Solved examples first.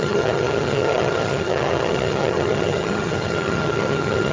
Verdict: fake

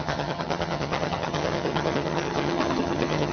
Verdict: fake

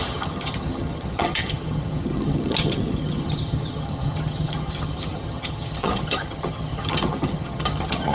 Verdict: fake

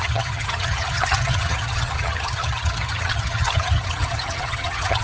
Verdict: fake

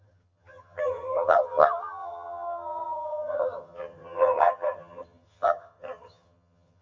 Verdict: fake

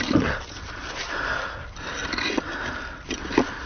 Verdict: real